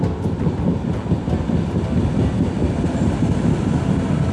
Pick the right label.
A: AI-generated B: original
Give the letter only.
B